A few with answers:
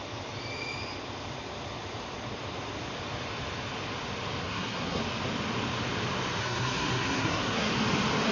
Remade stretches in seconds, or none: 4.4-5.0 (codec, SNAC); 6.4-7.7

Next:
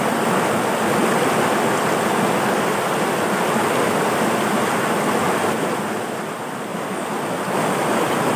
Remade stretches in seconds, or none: none

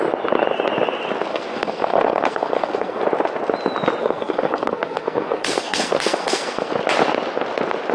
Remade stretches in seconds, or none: 1.3-3.0 (codec, SNAC); 4.0-6.7

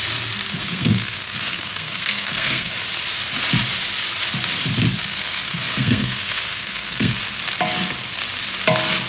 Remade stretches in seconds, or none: 0.6-2.7 (codec, SNAC); 5.1-7.2